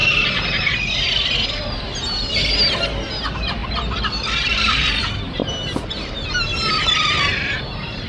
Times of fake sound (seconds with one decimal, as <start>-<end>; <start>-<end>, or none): 3.6-5.0

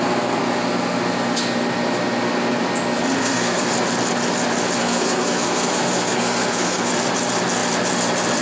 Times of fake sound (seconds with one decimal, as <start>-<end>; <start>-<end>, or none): 3.2-3.7; 4.8-6.9

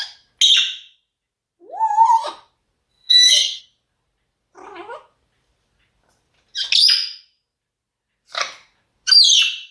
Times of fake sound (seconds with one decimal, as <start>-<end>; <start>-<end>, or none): 2.9-3.6

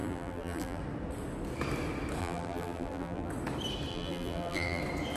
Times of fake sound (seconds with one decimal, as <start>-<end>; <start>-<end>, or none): 0.0-0.8; 2.2-3.3; 3.9-4.8

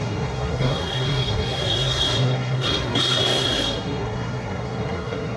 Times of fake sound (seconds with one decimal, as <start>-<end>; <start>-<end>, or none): 0.0-5.4

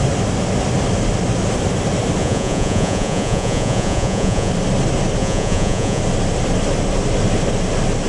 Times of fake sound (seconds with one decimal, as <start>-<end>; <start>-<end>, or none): 2.2-4.5; 5.2-6.0

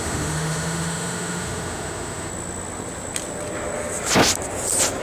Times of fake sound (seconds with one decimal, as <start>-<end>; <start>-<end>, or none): 0.0-2.3

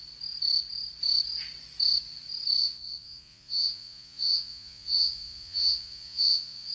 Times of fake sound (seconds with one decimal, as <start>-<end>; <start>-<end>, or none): 2.6-6.7